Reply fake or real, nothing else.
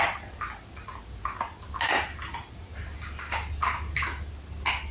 real